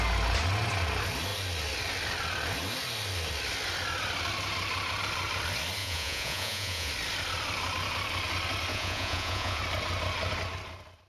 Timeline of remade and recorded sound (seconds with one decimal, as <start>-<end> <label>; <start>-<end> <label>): 0.0-5.8 recorded; 5.8-6.9 remade; 6.9-8.7 recorded; 8.7-9.6 remade; 9.6-11.1 recorded